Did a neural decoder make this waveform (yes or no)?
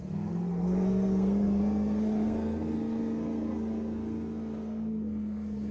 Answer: yes